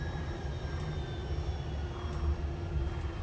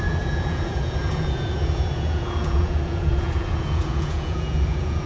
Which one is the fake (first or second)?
second